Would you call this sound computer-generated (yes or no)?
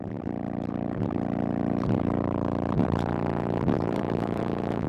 yes